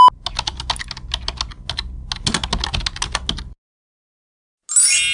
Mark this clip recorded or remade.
recorded